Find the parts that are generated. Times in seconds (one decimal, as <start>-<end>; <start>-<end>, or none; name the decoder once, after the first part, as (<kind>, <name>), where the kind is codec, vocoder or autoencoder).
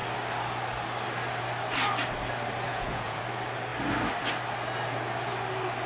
2.7-3.2 (vocoder, Vocos)